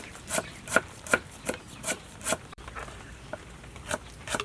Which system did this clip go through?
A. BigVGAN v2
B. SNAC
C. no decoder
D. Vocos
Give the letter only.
A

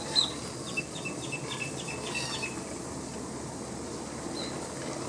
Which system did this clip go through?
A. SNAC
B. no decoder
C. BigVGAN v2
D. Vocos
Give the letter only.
B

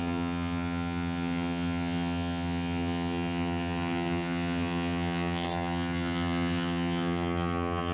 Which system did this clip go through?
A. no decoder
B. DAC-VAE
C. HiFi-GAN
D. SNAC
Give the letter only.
C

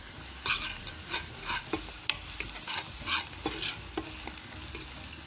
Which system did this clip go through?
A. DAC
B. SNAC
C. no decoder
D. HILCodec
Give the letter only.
C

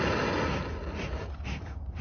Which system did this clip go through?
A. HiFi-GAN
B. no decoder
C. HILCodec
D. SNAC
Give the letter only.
B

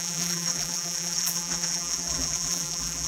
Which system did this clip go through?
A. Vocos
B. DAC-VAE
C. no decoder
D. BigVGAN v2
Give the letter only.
D